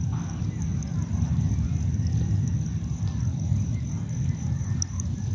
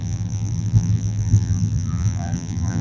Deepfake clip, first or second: second